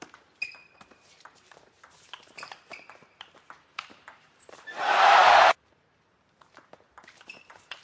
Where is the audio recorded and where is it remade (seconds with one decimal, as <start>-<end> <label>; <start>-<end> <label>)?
0.0-7.8 remade